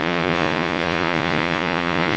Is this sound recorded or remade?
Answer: remade